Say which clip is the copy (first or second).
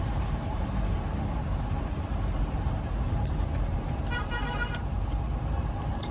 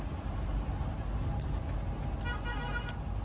first